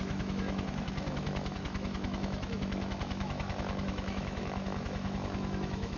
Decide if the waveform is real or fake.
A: fake